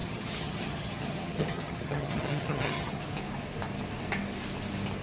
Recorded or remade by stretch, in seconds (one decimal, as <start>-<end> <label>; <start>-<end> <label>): 0.0-3.0 remade; 3.0-5.0 recorded